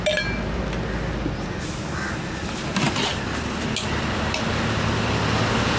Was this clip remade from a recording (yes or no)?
no